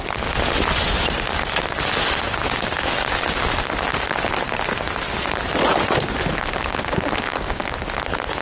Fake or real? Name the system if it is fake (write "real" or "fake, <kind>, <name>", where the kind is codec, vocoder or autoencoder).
real